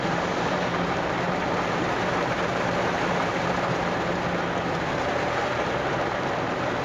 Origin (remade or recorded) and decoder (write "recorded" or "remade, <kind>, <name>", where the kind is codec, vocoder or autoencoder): remade, vocoder, BigVGAN v2